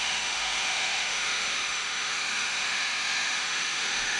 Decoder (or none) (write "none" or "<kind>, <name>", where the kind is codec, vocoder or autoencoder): autoencoder, DAC-VAE